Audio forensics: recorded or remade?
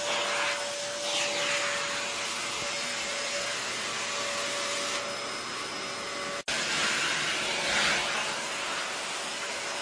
recorded